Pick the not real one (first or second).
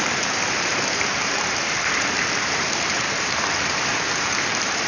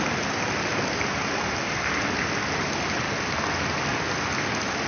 first